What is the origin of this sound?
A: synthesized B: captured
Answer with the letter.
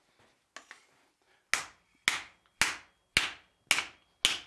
B